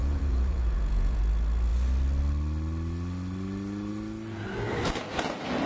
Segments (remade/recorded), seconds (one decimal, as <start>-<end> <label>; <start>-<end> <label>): 0.0-1.2 remade; 1.2-5.7 recorded

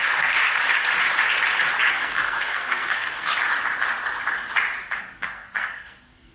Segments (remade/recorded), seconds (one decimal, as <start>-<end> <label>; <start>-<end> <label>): 0.0-0.4 remade; 0.4-1.9 recorded; 1.9-3.3 remade; 3.3-5.0 recorded; 5.0-6.3 remade

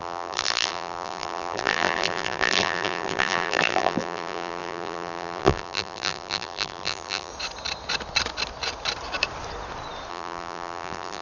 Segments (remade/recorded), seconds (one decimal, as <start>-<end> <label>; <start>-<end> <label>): 0.0-7.3 remade; 7.3-10.1 recorded; 10.1-11.2 remade

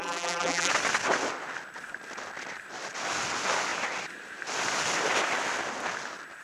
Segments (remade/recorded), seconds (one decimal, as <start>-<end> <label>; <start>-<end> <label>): 0.0-0.7 remade; 0.7-6.4 recorded